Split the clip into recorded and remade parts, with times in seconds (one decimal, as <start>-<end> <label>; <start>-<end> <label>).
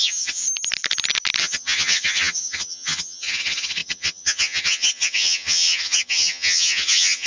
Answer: 0.0-0.4 remade; 0.4-1.4 recorded; 1.4-7.3 remade